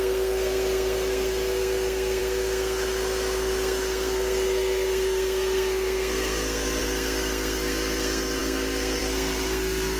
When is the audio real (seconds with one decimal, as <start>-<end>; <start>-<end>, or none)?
none